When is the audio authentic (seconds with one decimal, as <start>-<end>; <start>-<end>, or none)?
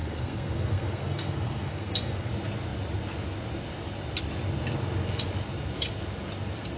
2.3-6.8